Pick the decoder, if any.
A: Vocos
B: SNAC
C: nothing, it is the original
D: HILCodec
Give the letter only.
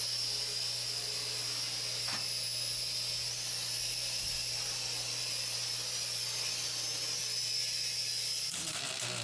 C